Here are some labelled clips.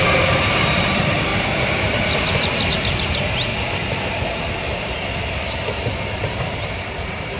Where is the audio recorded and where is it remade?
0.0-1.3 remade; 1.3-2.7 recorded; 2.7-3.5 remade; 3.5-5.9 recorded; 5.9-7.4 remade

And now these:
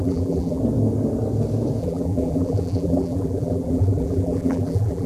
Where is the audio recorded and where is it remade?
0.0-0.6 remade; 0.6-1.8 recorded; 1.8-5.1 remade

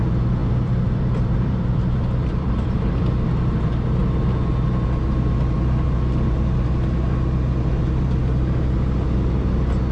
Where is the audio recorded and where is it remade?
0.0-0.4 recorded; 0.4-3.1 remade; 3.1-9.9 recorded

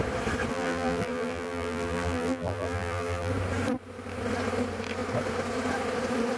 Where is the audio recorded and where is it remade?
0.0-0.5 recorded; 0.5-3.3 remade; 3.3-6.4 recorded

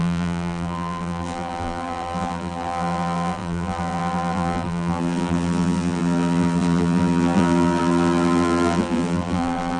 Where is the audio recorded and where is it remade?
0.0-9.8 remade